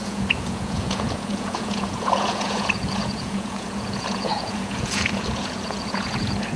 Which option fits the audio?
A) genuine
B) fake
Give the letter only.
B